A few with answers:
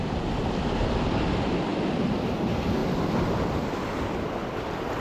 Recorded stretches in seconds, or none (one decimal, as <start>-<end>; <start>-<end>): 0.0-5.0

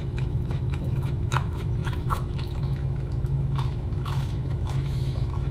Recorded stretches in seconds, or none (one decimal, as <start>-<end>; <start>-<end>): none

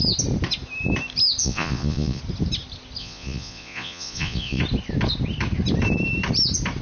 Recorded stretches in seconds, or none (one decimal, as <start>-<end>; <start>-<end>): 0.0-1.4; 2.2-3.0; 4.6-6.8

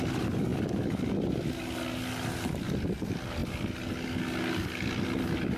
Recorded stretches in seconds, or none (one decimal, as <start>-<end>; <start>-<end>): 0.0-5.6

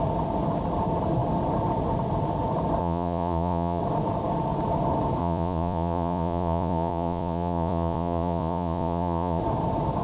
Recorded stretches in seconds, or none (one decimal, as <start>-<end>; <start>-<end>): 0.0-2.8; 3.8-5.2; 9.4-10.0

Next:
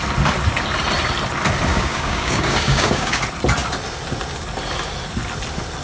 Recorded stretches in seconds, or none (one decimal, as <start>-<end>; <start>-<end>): 0.0-1.7; 3.2-5.8

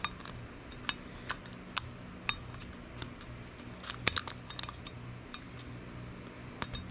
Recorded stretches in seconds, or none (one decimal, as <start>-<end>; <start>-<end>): 0.0-6.9

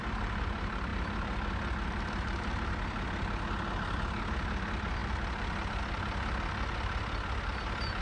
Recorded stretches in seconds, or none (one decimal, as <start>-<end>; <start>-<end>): 0.0-8.0